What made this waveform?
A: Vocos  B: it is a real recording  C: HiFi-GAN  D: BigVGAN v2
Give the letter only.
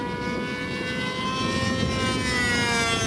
B